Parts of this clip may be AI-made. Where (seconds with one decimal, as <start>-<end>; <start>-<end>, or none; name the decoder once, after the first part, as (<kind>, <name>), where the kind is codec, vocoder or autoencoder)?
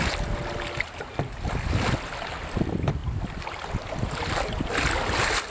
none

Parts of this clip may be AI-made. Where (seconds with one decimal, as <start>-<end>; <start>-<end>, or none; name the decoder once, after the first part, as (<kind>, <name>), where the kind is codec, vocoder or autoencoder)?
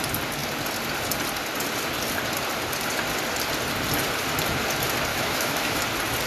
5.1-5.8 (autoencoder, DAC-VAE)